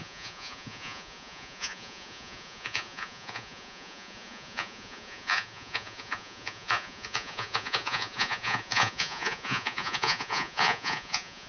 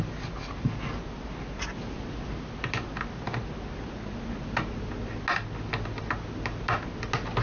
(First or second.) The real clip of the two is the second